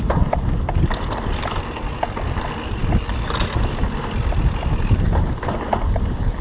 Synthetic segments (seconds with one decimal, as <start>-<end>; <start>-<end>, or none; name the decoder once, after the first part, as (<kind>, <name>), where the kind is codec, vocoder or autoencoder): none